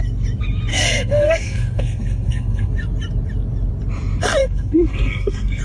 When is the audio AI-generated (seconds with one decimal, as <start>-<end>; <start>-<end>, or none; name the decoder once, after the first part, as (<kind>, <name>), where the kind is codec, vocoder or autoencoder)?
0.7-2.7 (codec, SNAC); 4.4-5.6